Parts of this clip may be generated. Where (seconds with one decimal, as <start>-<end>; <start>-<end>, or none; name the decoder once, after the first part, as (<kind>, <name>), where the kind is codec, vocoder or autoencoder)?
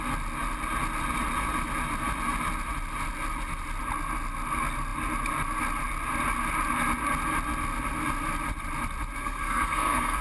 9.2-10.2 (codec, SNAC)